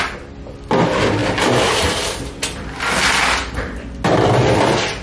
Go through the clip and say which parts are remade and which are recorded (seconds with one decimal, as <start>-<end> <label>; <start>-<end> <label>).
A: 0.0-5.0 recorded